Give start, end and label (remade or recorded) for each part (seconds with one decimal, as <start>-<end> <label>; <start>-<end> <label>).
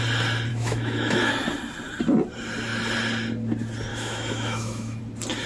0.0-0.5 recorded; 0.5-1.3 remade; 1.3-3.9 recorded; 3.9-5.0 remade; 5.0-5.5 recorded